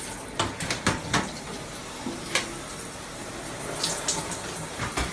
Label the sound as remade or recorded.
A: recorded